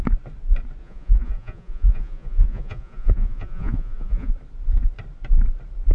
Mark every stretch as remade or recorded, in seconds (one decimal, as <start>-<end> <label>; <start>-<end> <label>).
0.0-0.8 recorded; 0.8-4.3 remade; 4.3-5.9 recorded